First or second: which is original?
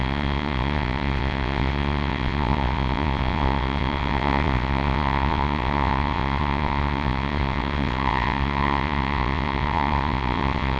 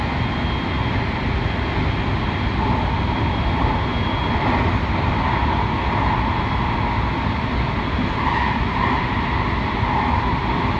second